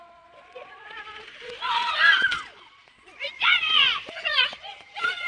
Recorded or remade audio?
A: remade